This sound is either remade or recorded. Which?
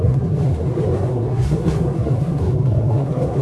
remade